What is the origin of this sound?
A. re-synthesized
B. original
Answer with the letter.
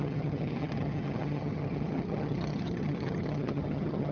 A